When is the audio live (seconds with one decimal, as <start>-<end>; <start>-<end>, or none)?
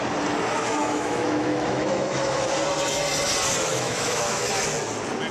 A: 0.0-0.8; 2.5-3.7; 4.5-5.3